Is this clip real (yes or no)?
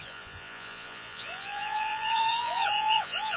no